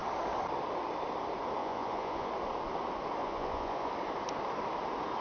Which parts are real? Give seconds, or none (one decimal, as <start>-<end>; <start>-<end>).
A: 0.0-1.6; 2.3-3.2; 3.9-5.2